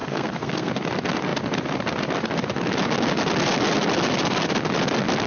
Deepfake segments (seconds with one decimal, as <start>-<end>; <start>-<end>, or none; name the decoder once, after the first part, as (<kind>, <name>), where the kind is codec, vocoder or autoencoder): 0.0-0.7 (codec, SNAC)